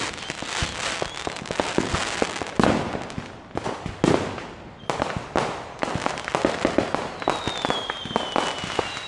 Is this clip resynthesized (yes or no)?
no